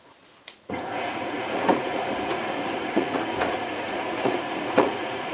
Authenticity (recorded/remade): remade